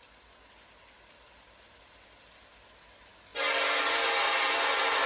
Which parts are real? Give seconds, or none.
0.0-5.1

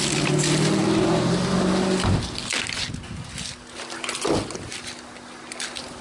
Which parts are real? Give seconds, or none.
0.0-6.0